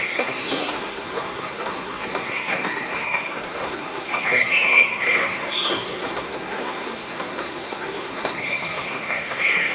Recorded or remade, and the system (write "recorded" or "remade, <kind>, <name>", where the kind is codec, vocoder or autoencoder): remade, codec, SNAC